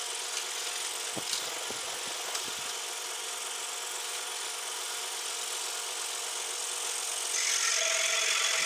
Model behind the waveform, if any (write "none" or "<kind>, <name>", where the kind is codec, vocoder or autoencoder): none